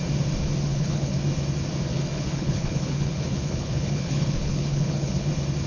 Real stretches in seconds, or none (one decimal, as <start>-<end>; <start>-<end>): 0.0-0.7; 1.2-1.9; 5.3-5.7